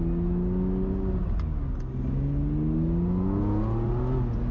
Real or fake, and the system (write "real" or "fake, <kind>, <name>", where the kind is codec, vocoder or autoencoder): real